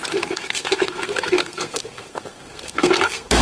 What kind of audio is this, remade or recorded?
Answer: remade